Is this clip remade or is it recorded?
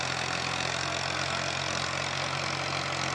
recorded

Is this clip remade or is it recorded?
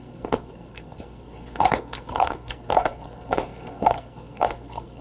remade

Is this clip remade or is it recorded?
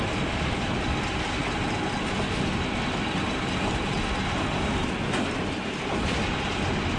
recorded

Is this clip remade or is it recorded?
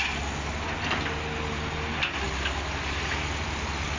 recorded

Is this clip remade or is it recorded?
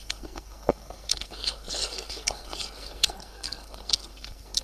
remade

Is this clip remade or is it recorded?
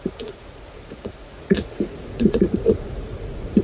remade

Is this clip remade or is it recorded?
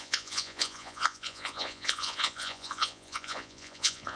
remade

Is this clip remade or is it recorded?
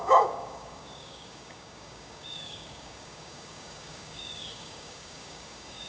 remade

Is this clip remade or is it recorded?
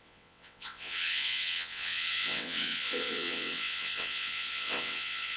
remade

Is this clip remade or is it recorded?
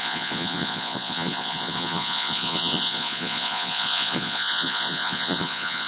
remade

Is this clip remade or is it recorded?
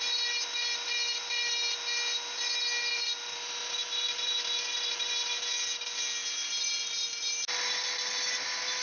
recorded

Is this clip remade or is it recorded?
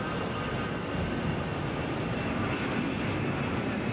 recorded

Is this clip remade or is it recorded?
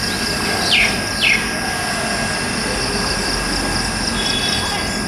recorded